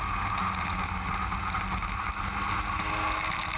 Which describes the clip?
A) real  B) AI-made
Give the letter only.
A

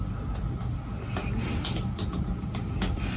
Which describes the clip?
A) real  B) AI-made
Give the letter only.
A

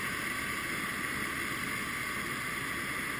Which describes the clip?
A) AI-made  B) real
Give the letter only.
B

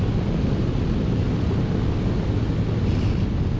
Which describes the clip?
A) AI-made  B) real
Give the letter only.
B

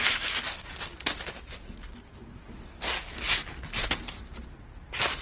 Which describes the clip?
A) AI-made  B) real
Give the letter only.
B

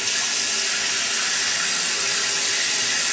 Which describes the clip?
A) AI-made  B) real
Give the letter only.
B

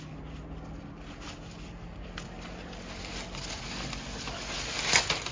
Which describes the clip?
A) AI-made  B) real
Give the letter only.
B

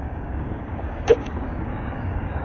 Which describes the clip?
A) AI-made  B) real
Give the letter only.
A